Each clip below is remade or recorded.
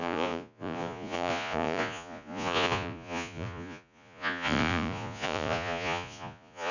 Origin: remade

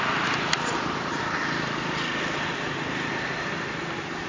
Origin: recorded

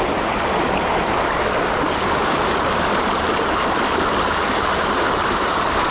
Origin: recorded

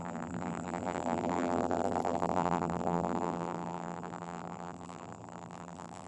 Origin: remade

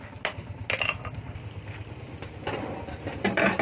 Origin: recorded